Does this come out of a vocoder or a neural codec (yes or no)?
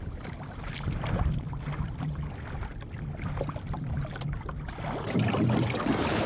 no